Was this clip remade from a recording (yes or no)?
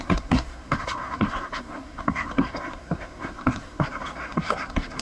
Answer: yes